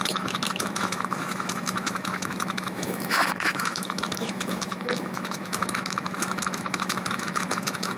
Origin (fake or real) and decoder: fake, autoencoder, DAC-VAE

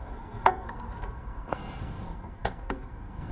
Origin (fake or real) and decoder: fake, codec, SNAC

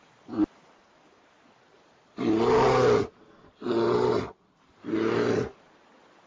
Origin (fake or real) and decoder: real